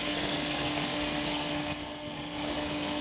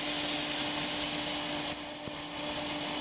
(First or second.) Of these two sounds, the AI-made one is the first